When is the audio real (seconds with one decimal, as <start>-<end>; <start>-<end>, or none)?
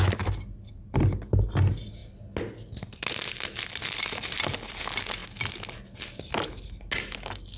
0.0-7.6